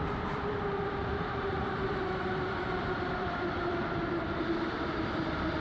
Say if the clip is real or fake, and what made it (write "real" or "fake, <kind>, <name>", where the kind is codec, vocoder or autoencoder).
fake, vocoder, BigVGAN v2